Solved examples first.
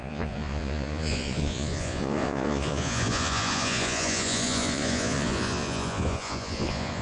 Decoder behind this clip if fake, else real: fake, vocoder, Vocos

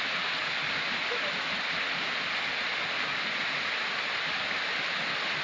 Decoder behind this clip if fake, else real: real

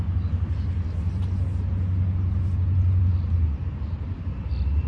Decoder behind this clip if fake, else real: real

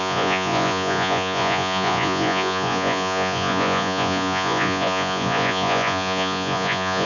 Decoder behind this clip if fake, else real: fake, vocoder, Vocos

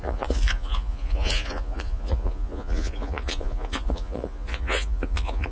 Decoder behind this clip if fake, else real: fake, vocoder, Vocos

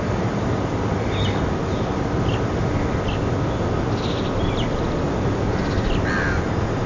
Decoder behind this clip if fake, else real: real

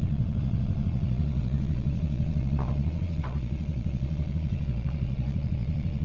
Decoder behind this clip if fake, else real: fake, vocoder, Vocos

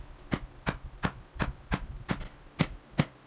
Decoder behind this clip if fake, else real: real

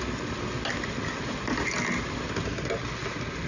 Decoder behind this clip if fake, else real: real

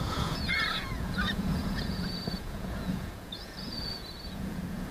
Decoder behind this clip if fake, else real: fake, vocoder, Vocos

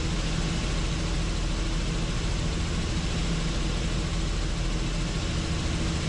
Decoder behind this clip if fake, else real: real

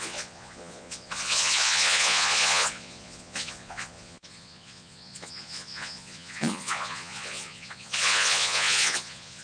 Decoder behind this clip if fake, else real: fake, vocoder, Vocos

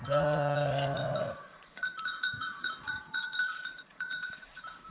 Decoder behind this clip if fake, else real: fake, vocoder, Vocos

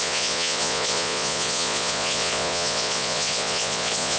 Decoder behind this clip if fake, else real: fake, vocoder, Vocos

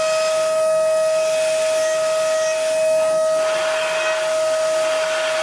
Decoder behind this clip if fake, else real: real